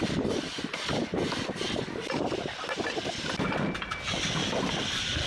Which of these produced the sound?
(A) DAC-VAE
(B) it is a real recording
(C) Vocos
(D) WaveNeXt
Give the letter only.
B